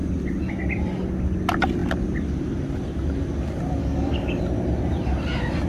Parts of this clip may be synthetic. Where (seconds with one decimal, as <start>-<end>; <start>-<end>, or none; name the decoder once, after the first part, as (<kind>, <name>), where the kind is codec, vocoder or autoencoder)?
3.8-4.4 (codec, DAC)